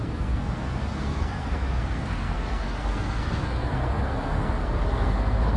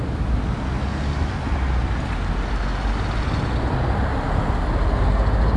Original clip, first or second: second